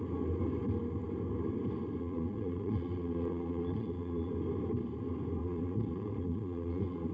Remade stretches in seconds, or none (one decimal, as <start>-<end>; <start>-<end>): 2.0-4.3; 5.4-7.1